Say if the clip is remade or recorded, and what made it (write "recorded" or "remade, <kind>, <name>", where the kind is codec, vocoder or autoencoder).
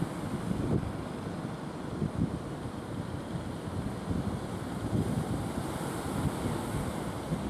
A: recorded